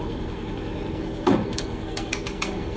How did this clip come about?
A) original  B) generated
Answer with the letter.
B